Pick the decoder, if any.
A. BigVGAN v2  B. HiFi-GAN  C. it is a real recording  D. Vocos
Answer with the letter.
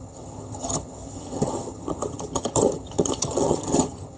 B